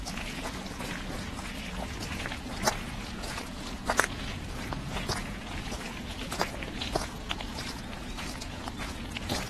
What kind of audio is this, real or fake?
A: fake